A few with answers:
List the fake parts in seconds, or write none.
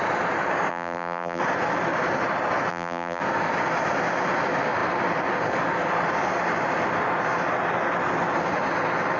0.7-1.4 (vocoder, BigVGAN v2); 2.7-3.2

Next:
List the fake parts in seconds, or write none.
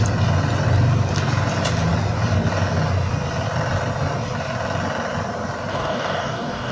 5.7-6.7 (codec, DAC)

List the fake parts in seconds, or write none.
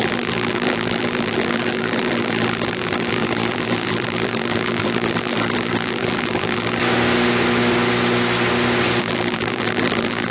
0.0-6.8 (vocoder, BigVGAN v2); 9.0-10.3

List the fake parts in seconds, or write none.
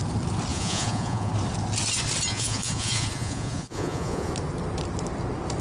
0.5-1.3 (vocoder, Vocos); 2.3-4.3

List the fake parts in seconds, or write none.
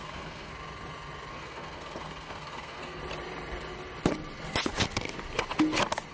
0.0-0.5 (codec, SNAC); 1.3-3.0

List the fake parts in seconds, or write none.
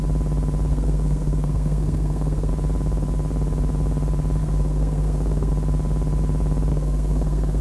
0.7-2.5 (codec, SNAC); 4.4-5.5; 6.7-7.6